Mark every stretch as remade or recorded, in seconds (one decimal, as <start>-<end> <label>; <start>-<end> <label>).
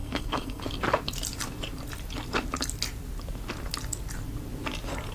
0.0-0.6 remade; 0.6-5.1 recorded